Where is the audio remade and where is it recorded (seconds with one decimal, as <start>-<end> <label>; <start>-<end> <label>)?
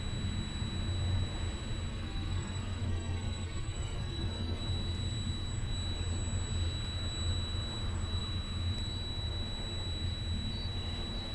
0.0-1.9 recorded; 1.9-4.6 remade; 4.6-11.3 recorded